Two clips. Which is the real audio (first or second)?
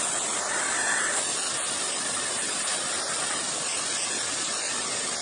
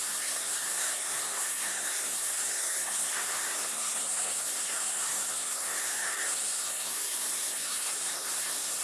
first